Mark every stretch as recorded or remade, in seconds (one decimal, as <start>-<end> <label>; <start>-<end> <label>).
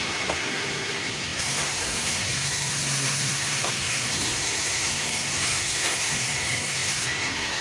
0.0-7.6 remade